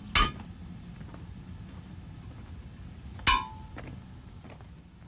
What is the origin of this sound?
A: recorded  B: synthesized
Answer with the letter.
A